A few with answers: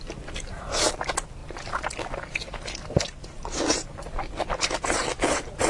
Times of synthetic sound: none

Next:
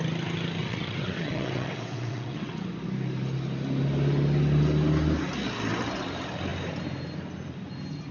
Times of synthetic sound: 0.6-2.7 (vocoder, WaveNeXt)

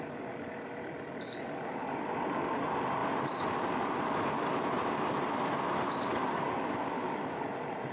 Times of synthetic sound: none